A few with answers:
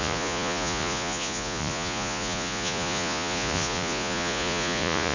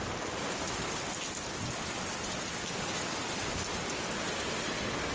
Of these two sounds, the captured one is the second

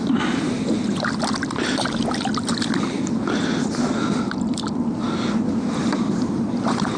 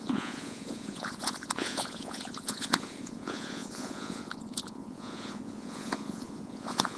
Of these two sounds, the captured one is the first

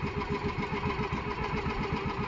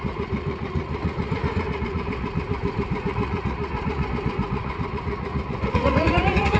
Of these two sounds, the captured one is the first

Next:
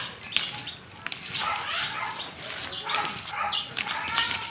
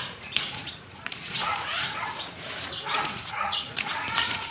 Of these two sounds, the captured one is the first